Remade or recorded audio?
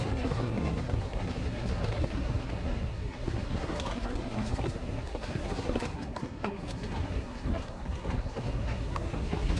remade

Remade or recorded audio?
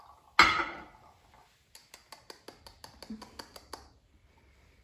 recorded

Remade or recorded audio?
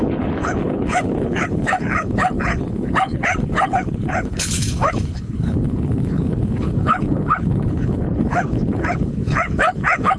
remade